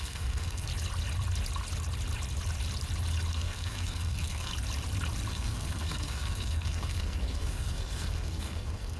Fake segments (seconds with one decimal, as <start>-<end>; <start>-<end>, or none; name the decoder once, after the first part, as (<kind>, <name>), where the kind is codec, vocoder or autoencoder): 0.0-0.7 (codec, SNAC); 3.3-4.5; 5.3-9.0